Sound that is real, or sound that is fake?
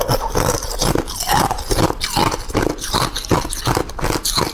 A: real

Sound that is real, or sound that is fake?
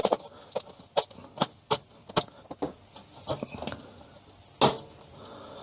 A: real